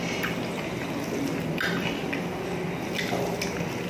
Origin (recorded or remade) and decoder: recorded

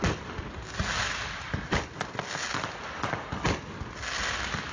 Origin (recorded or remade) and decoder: recorded